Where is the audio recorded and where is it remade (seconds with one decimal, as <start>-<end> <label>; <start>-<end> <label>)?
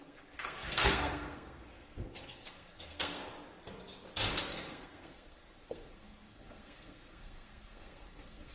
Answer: 0.0-3.2 remade; 3.2-4.4 recorded; 4.4-8.5 remade